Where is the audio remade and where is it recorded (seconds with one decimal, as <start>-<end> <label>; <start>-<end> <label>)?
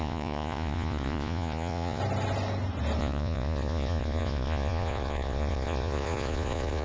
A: 0.0-2.0 remade; 2.0-3.0 recorded; 3.0-6.8 remade